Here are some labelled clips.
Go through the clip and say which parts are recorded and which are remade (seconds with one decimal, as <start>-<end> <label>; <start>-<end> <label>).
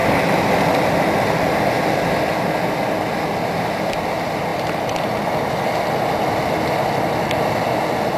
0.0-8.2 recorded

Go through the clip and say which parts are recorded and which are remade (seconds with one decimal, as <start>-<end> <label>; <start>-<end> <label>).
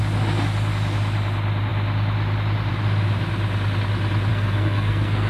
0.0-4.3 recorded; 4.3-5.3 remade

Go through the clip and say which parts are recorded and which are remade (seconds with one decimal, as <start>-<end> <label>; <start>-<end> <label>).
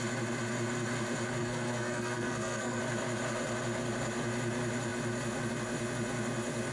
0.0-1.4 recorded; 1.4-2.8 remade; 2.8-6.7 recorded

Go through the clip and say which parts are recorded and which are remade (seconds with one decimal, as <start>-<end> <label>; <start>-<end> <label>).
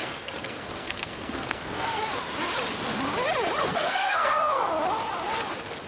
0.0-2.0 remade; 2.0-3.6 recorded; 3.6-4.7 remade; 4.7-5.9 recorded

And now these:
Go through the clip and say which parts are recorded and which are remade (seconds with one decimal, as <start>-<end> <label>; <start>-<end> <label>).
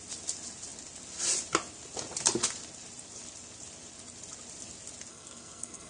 0.0-5.1 recorded; 5.1-5.9 remade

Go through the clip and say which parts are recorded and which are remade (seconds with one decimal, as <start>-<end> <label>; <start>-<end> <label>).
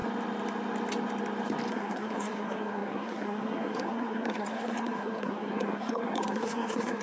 0.0-1.7 recorded; 1.7-7.0 remade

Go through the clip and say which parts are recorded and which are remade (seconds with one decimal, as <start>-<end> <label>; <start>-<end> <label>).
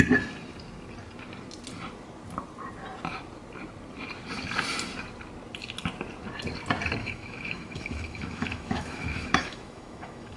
0.0-7.0 recorded; 7.0-10.4 remade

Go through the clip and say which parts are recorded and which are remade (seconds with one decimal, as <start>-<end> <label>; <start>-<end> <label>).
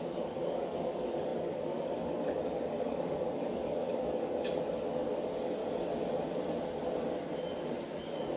0.0-5.6 remade; 5.6-8.0 recorded; 8.0-8.4 remade